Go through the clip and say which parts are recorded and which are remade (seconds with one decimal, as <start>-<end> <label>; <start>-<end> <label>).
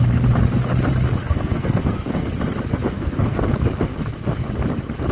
0.0-1.2 recorded; 1.2-2.3 remade; 2.3-2.8 recorded; 2.8-3.4 remade; 3.4-5.1 recorded